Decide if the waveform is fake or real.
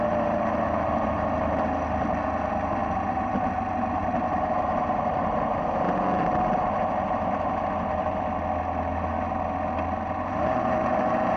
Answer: real